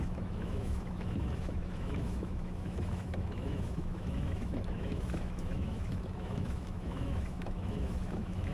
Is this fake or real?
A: fake